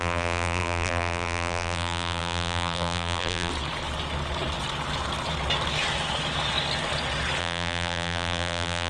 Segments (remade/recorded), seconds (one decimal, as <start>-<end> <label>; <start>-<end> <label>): 0.0-3.5 remade; 3.5-7.4 recorded; 7.4-8.9 remade